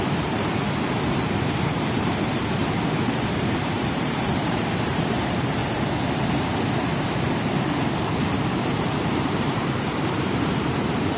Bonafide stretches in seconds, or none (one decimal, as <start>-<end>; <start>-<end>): 5.6-9.0